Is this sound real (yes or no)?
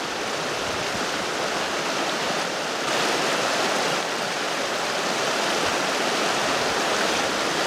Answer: yes